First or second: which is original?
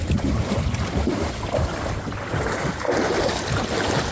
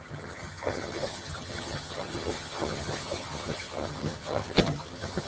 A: first